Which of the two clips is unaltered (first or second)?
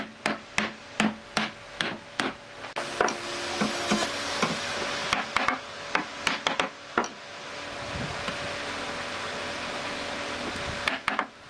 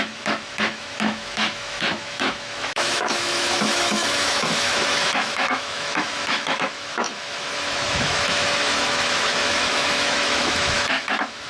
first